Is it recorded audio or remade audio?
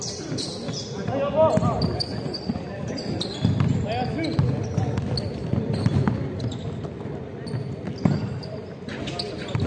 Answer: recorded